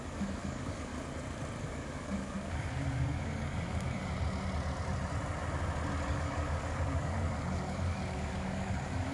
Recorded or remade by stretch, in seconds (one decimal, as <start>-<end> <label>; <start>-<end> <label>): 0.0-0.9 remade; 0.9-1.6 recorded; 1.6-4.0 remade; 4.0-6.1 recorded; 6.1-9.1 remade